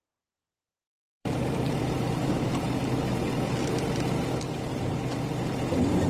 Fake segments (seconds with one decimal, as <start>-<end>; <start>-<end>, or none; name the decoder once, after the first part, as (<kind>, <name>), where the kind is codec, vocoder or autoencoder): 0.4-4.1 (vocoder, BigVGAN v2)